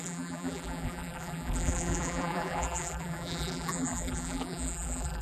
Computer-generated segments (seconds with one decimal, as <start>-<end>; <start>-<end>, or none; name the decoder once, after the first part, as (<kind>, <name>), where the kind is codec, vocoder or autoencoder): 0.0-5.2 (vocoder, BigVGAN v2)